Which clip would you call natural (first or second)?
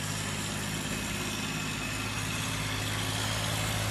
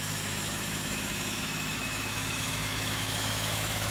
first